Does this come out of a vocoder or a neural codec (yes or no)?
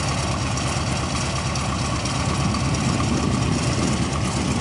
no